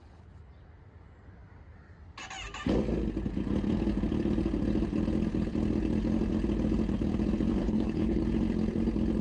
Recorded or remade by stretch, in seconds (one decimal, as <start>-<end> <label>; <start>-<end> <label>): 0.0-7.6 recorded; 7.6-8.2 remade; 8.2-9.2 recorded